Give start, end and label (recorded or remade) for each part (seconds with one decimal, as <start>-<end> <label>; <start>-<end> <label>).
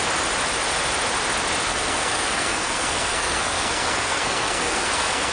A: 0.0-1.7 recorded; 1.7-5.3 remade